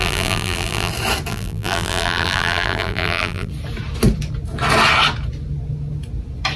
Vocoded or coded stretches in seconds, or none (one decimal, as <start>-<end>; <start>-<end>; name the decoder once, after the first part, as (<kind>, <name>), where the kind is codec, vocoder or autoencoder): 0.0-0.9 (vocoder, BigVGAN v2); 1.3-3.5